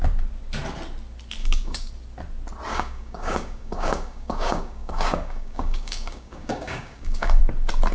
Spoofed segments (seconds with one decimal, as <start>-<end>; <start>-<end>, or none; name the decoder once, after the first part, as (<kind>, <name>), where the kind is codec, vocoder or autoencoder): 1.4-1.9 (codec, DAC); 2.7-7.4

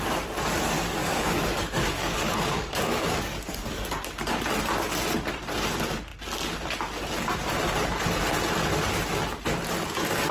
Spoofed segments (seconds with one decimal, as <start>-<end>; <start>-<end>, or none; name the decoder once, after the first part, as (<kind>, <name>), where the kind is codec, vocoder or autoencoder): 1.0-4.0 (codec, DAC)

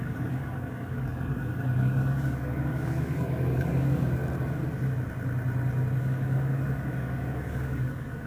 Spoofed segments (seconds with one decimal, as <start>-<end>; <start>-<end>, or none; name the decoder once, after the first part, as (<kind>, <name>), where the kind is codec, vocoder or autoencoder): 0.0-4.2 (codec, DAC); 6.0-8.3